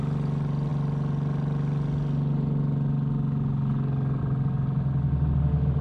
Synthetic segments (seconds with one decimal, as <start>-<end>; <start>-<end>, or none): none